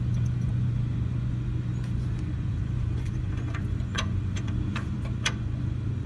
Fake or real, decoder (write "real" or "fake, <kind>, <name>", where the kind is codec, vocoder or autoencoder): fake, vocoder, Vocos